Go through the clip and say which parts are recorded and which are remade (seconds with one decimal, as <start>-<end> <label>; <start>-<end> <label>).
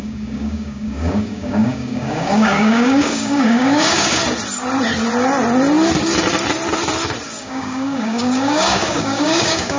0.0-4.2 remade; 4.2-7.4 recorded; 7.4-9.8 remade